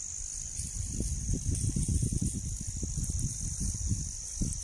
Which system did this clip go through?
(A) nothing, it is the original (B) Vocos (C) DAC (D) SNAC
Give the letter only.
A